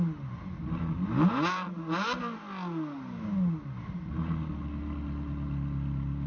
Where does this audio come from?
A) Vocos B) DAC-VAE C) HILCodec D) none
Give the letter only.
D